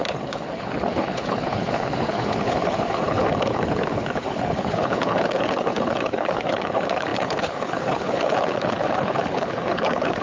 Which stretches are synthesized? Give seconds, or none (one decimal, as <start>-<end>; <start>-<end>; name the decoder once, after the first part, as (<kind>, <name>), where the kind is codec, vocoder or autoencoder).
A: 0.0-10.2 (codec, HILCodec)